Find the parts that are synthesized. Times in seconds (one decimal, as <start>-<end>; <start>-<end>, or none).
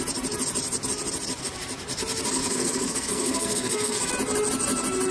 2.4-4.1